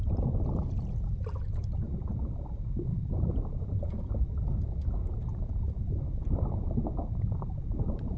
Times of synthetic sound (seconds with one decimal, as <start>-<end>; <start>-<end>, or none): 1.6-2.3; 2.9-4.1; 5.0-8.2